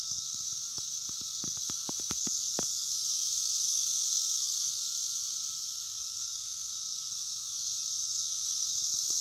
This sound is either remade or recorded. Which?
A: remade